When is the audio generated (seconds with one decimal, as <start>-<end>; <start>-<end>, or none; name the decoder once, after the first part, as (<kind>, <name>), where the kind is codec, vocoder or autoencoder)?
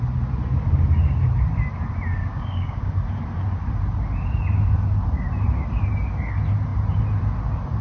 2.2-2.9 (codec, DAC)